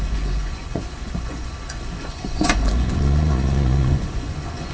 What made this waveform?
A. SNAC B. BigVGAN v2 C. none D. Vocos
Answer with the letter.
D